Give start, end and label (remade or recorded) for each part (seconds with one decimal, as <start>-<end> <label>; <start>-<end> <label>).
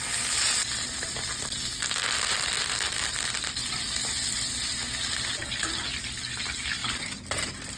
0.0-7.8 recorded